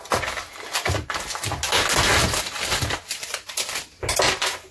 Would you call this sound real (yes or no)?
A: yes